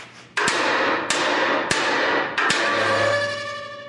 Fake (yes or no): no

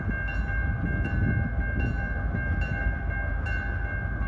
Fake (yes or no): no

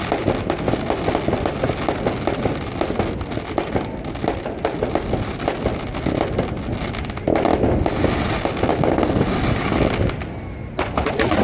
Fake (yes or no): no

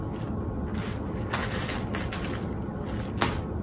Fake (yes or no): no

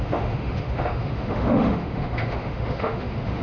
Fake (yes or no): yes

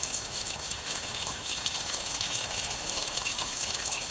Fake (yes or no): yes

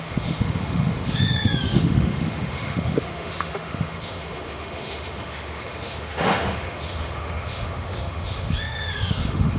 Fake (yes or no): yes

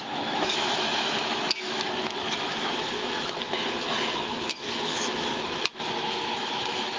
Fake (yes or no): yes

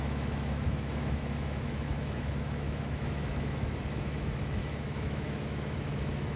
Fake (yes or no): yes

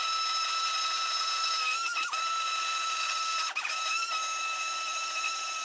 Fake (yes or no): no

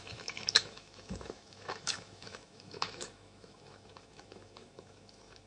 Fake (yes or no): yes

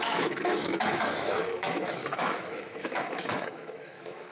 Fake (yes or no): yes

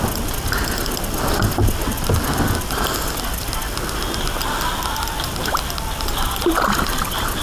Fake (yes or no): no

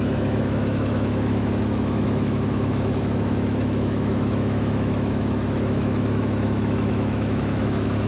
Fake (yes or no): yes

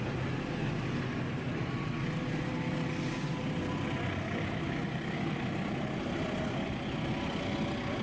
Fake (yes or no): no